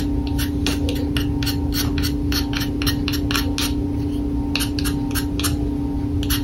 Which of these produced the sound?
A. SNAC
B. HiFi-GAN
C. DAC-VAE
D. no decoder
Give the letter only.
D